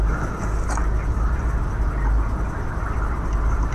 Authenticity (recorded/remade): recorded